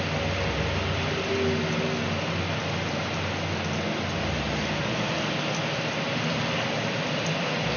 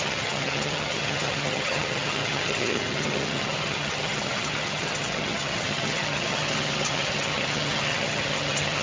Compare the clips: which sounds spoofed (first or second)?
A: second